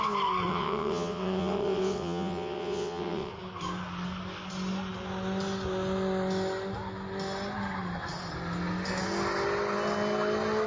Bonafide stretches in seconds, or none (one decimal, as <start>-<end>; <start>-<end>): 0.0-0.5; 3.3-10.7